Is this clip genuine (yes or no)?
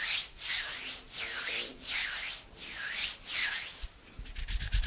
yes